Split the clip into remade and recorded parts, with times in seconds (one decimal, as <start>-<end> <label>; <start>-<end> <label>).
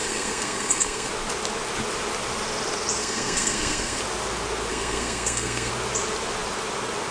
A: 0.0-1.1 remade; 1.1-3.0 recorded; 3.0-4.0 remade; 4.0-4.7 recorded; 4.7-5.7 remade; 5.7-7.1 recorded